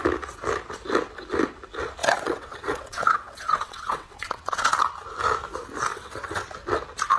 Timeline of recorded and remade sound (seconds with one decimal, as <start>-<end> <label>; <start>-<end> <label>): 0.0-2.0 recorded; 2.0-4.7 remade; 4.7-5.9 recorded; 5.9-6.5 remade; 6.5-7.2 recorded